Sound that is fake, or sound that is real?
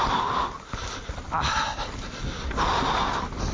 real